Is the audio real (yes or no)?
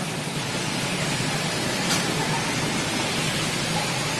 yes